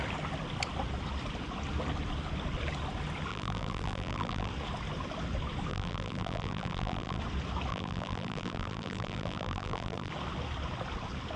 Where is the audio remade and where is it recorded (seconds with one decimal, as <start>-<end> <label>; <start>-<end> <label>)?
0.0-3.3 recorded; 3.3-4.5 remade; 4.5-5.7 recorded; 5.7-7.2 remade; 7.2-7.7 recorded; 7.7-10.1 remade; 10.1-11.4 recorded